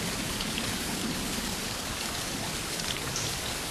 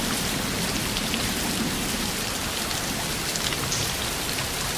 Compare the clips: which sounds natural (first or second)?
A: second